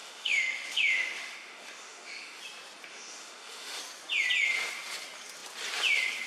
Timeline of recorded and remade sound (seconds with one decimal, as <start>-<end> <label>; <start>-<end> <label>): 0.0-2.4 remade; 2.4-2.9 recorded; 2.9-3.8 remade; 3.8-6.3 recorded